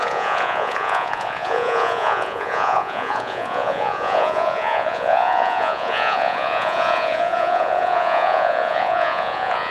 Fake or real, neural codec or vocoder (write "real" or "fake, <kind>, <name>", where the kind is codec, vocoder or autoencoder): fake, vocoder, Vocos